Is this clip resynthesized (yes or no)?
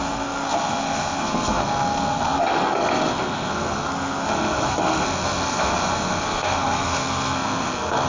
yes